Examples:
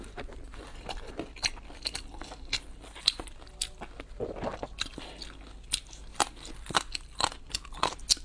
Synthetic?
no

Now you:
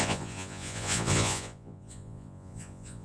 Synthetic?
yes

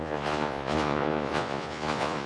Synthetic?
yes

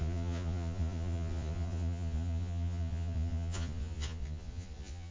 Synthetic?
yes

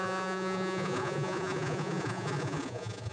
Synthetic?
yes